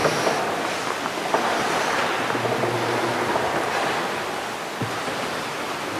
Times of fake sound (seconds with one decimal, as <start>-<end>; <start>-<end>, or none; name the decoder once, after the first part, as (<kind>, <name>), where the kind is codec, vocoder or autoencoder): 0.0-6.0 (vocoder, BigVGAN v2)